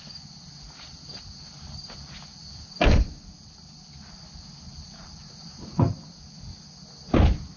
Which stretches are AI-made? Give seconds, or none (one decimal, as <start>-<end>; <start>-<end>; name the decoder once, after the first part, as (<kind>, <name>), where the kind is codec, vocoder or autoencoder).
none